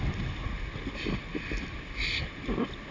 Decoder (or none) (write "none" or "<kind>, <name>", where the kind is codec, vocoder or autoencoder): none